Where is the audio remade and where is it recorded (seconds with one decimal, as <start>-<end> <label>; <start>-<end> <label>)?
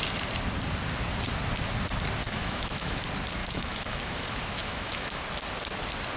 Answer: 0.0-2.2 recorded; 2.2-3.0 remade; 3.0-3.4 recorded; 3.4-5.2 remade; 5.2-6.2 recorded